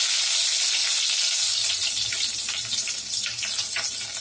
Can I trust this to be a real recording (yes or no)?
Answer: yes